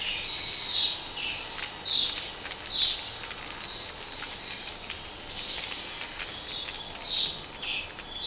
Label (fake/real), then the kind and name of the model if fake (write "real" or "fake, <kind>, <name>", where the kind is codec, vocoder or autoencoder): real